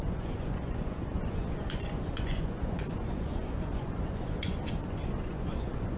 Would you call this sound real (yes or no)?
no